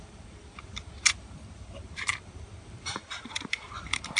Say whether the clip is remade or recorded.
remade